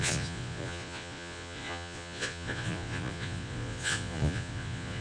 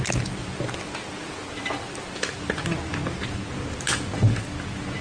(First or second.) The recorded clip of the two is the second